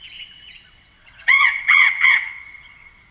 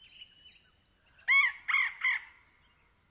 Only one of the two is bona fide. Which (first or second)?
second